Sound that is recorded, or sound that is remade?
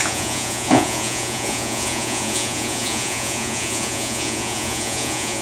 remade